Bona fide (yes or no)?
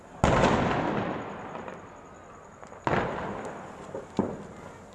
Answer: yes